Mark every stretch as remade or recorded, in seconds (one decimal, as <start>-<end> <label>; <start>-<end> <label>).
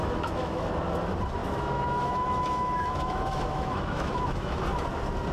0.0-0.7 remade; 0.7-1.4 recorded; 1.4-4.6 remade; 4.6-5.3 recorded